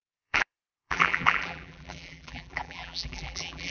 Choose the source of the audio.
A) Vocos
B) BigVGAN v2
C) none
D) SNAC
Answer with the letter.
B